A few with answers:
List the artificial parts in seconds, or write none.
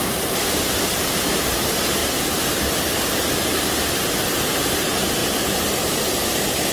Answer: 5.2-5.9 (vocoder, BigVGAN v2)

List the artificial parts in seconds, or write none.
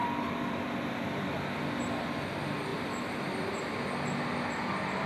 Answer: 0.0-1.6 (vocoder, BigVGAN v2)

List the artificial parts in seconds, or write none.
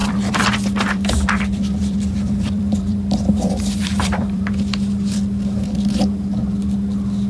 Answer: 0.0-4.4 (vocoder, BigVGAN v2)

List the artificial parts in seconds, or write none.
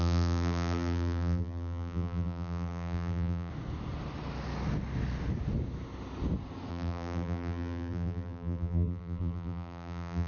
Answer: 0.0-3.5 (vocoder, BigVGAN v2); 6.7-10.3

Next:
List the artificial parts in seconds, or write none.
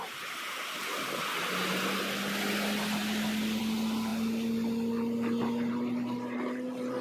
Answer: none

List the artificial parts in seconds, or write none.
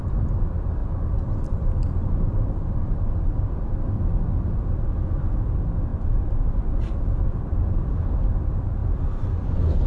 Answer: none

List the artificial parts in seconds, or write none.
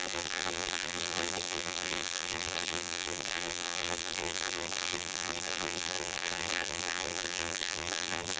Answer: 0.0-8.4 (vocoder, BigVGAN v2)